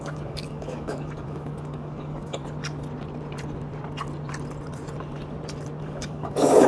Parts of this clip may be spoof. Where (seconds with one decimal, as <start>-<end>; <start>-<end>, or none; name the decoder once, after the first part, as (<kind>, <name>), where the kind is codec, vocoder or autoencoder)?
0.0-2.4 (codec, DAC); 5.8-6.7